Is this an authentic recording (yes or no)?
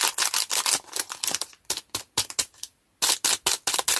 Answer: yes